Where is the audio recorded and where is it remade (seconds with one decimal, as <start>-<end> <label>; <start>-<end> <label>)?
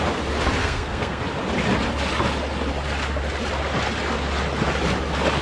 0.0-0.6 recorded; 0.6-1.2 remade; 1.2-5.4 recorded